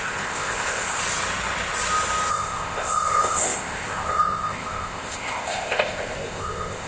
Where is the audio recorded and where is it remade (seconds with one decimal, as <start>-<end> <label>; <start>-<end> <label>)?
0.0-1.0 remade; 1.0-2.3 recorded; 2.3-6.9 remade